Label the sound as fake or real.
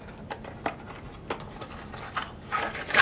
real